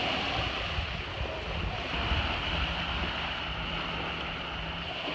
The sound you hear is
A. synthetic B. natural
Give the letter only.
B